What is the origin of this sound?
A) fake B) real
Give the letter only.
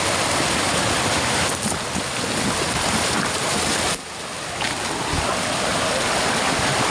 B